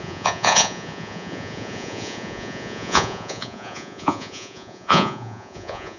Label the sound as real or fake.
fake